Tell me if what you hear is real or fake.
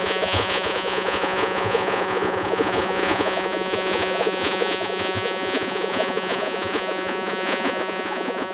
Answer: fake